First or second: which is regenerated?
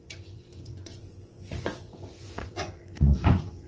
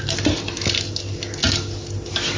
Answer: first